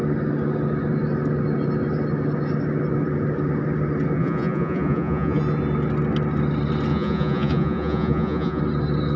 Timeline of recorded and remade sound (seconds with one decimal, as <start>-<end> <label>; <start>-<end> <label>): 0.0-4.2 recorded; 4.2-5.4 remade; 5.4-6.9 recorded; 6.9-8.6 remade; 8.6-9.2 recorded